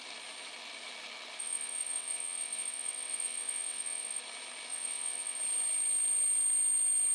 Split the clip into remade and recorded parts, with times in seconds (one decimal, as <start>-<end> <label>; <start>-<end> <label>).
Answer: 0.0-1.4 recorded; 1.4-4.2 remade; 4.2-4.7 recorded; 4.7-5.4 remade; 5.4-7.1 recorded